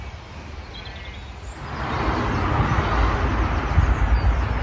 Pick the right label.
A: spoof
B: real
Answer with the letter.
B